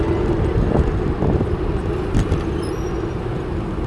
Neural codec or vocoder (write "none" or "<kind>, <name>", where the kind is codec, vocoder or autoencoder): none